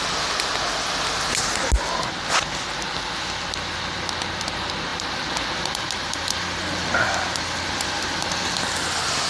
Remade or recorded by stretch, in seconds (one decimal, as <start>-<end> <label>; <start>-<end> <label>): 0.0-4.9 recorded; 4.9-9.3 remade